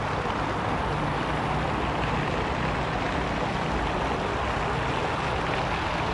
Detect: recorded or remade recorded